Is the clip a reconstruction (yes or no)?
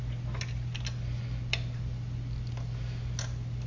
no